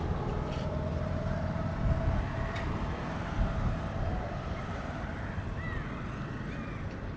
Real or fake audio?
real